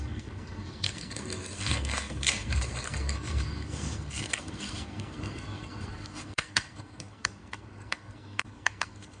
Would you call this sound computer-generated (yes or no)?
yes